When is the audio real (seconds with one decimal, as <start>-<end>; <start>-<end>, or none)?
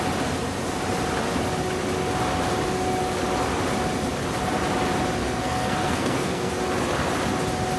0.0-5.2; 6.5-7.8